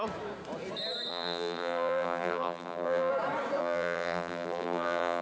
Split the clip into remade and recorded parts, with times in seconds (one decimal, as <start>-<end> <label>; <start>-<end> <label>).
0.0-1.1 recorded; 1.1-3.1 remade; 3.1-3.6 recorded; 3.6-5.2 remade